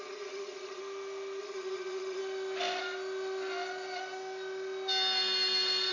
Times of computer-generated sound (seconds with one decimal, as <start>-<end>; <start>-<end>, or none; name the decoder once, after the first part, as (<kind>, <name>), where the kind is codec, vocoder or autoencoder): 0.0-0.8 (vocoder, Vocos); 1.4-2.2